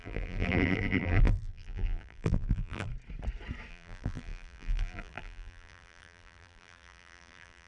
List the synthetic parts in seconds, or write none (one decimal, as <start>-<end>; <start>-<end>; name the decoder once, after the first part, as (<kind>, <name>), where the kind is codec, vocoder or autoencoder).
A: 0.0-2.9 (vocoder, BigVGAN v2); 3.7-7.7